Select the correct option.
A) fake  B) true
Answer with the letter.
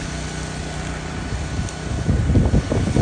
B